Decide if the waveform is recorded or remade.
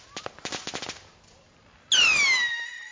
recorded